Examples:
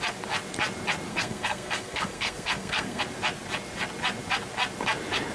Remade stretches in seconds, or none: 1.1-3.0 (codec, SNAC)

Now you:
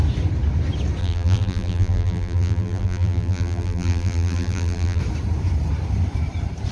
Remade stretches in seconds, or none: 1.0-5.0 (vocoder, BigVGAN v2)

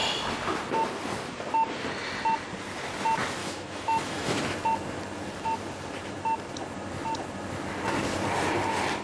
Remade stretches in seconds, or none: 3.4-4.4 (autoencoder, DAC-VAE)